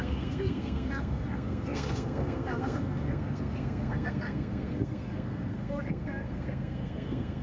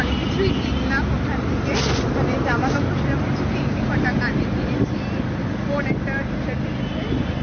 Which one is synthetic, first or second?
first